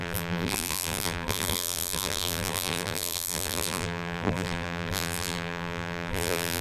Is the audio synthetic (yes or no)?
yes